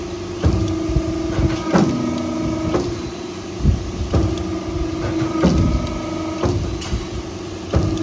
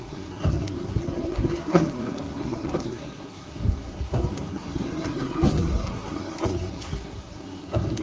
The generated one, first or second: second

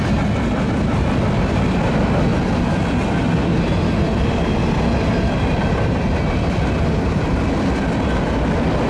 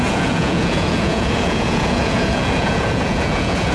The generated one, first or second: second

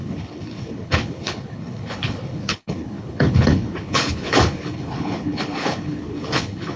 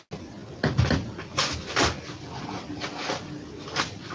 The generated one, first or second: first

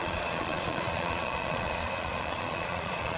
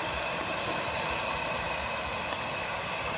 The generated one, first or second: first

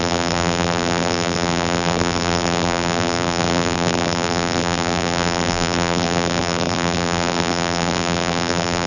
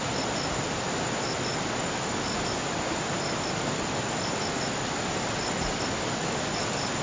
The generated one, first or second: first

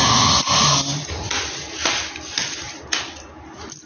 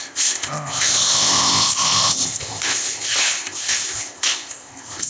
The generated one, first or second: second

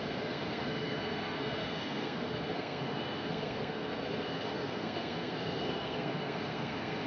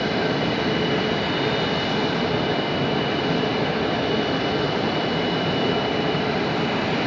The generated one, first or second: first